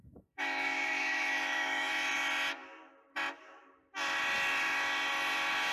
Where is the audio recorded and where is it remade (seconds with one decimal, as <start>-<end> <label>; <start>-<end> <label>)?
0.0-1.9 remade; 1.9-5.7 recorded